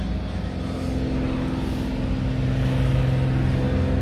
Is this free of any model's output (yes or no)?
yes